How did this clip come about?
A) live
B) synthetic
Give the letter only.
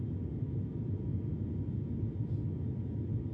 A